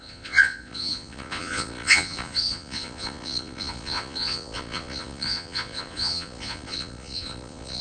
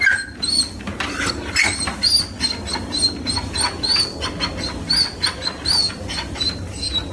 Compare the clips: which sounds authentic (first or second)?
second